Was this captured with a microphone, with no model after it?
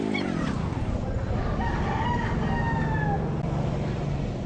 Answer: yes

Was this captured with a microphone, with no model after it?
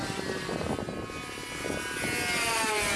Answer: yes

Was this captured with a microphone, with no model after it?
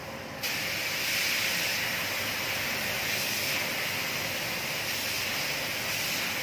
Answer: yes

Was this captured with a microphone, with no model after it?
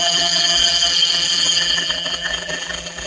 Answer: no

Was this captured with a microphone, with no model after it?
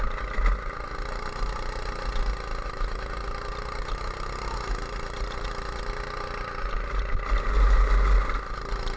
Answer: yes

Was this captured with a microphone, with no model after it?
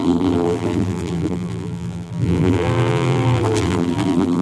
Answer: no